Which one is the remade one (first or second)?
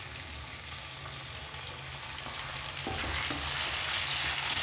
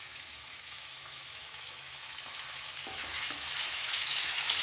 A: second